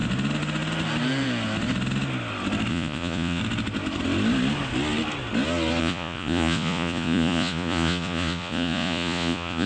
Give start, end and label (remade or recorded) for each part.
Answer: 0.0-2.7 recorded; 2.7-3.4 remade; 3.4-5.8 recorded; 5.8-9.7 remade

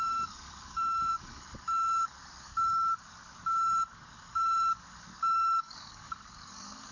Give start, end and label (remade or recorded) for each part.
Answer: 0.0-6.9 remade

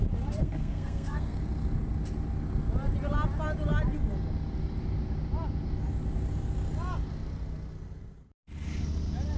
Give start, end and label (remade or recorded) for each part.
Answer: 0.0-0.4 recorded; 0.4-1.4 remade; 1.4-9.4 recorded

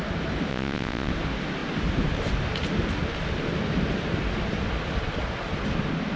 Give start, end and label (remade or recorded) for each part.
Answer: 0.0-0.5 recorded; 0.5-1.1 remade; 1.1-6.2 recorded

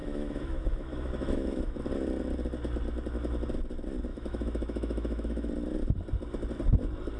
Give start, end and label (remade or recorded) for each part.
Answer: 0.0-1.8 remade; 1.8-4.1 recorded; 4.1-5.5 remade; 5.5-7.2 recorded